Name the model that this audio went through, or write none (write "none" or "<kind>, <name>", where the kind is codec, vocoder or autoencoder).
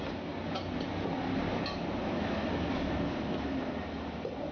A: none